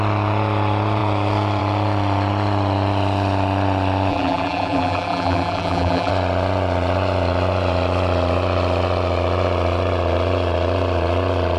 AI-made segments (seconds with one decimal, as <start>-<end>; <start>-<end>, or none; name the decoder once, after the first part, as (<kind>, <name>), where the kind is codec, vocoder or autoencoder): 4.1-6.1 (vocoder, BigVGAN v2)